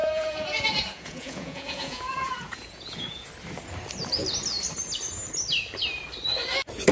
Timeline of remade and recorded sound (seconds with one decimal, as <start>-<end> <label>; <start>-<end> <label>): 0.0-3.3 remade; 3.3-6.9 recorded